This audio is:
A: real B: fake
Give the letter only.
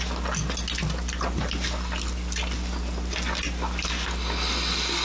A